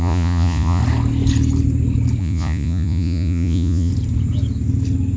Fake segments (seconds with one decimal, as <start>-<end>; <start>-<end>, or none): 0.0-0.8; 2.2-3.9